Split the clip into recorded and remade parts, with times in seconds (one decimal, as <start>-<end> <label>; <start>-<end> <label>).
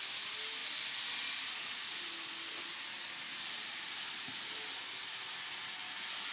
0.0-6.3 recorded